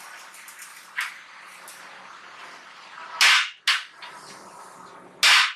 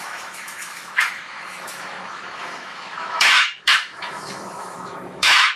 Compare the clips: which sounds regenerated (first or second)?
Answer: second